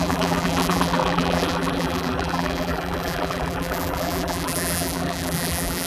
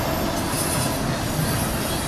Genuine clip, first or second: second